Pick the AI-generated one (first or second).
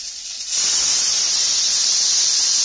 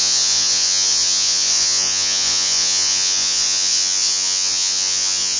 second